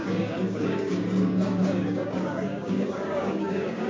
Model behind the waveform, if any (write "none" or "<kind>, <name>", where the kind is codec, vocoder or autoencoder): codec, DAC